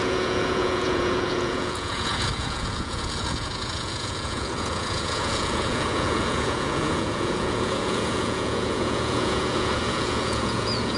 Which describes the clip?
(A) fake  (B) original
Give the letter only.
A